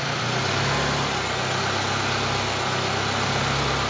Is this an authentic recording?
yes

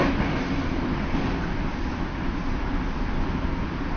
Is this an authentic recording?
yes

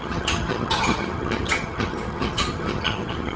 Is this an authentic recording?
no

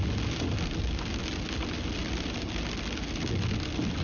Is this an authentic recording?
yes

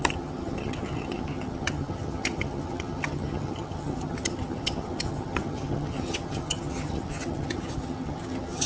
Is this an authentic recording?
no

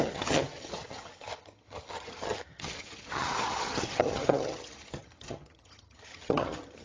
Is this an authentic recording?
no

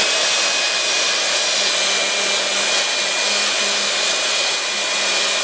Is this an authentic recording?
yes